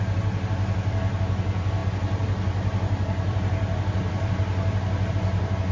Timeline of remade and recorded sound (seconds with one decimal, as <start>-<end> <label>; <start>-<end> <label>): 0.0-5.7 recorded